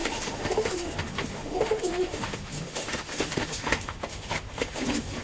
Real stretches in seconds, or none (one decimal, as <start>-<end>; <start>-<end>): none